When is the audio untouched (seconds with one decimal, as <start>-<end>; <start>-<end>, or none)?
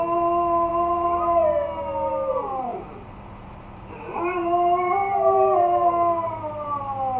0.0-2.7; 6.8-7.2